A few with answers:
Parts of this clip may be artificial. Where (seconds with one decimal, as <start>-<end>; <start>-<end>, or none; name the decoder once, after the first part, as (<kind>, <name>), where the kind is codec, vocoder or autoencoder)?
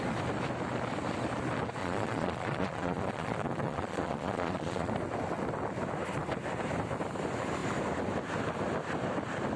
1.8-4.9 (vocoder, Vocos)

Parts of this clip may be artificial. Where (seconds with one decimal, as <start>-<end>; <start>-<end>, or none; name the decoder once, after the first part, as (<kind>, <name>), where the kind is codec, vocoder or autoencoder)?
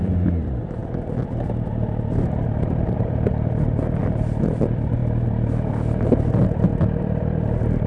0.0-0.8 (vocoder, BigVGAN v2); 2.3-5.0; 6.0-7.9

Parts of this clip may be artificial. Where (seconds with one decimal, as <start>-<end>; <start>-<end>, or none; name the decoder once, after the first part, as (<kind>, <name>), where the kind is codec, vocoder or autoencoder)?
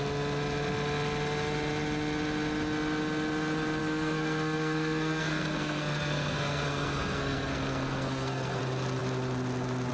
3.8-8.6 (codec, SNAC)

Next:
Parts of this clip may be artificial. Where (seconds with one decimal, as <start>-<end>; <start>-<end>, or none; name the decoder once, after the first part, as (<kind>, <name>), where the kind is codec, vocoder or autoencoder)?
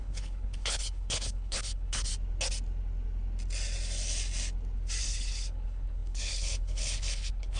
0.0-2.1 (codec, HILCodec); 5.0-7.6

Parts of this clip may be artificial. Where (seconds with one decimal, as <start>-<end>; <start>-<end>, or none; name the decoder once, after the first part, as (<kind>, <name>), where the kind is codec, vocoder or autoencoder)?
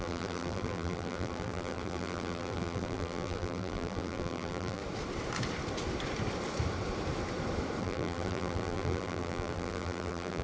0.0-4.8 (vocoder, BigVGAN v2); 7.8-10.4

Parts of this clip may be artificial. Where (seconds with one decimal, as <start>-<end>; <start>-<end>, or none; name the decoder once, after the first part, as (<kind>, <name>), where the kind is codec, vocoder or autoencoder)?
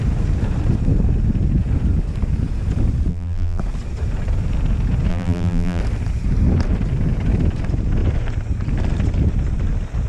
3.1-3.6 (vocoder, BigVGAN v2); 5.1-5.8